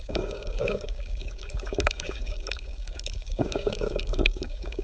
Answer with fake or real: fake